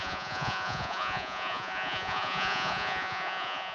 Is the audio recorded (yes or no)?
no